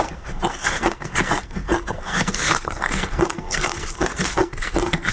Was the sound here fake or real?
fake